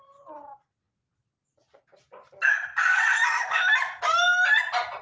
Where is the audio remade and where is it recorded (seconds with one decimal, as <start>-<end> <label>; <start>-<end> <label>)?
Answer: 0.0-5.0 recorded